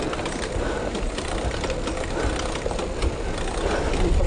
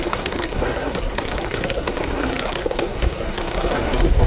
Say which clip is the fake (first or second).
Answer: second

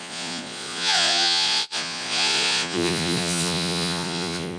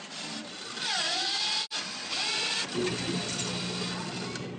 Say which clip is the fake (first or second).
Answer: first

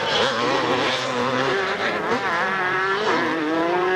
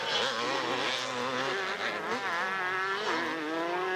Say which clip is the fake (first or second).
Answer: first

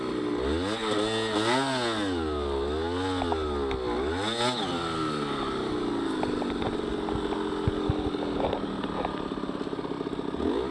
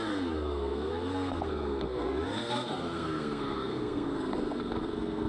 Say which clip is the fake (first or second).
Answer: second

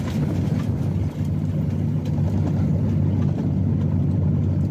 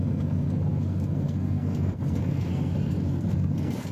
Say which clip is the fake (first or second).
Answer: second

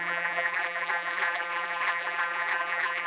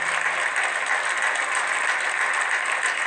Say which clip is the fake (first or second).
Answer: first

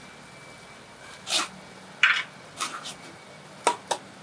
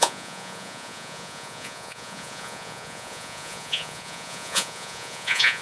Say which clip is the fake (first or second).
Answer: second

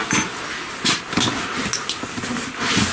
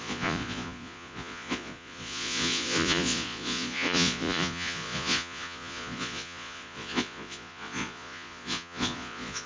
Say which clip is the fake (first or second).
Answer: second